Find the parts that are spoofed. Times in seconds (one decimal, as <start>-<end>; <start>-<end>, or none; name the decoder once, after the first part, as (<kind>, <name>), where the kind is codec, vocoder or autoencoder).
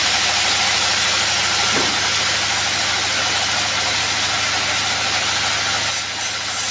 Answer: none